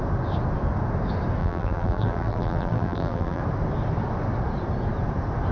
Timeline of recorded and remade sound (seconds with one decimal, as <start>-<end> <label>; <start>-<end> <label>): 0.0-1.4 recorded; 1.4-3.4 remade; 3.4-5.5 recorded